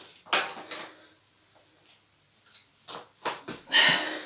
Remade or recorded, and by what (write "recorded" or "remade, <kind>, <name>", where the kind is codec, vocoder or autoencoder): recorded